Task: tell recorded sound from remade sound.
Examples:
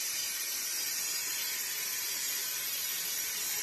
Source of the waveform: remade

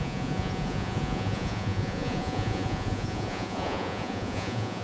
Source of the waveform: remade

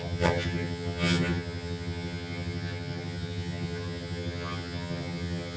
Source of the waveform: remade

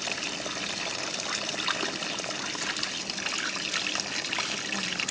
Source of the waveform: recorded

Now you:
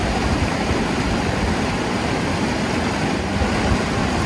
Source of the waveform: recorded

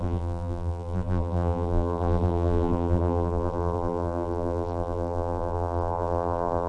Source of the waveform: remade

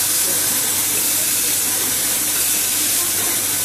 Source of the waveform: recorded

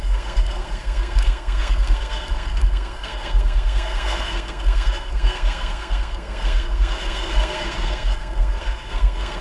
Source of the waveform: remade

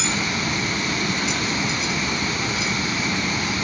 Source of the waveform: recorded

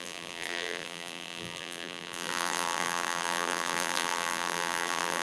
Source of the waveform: remade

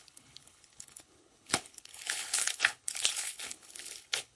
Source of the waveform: remade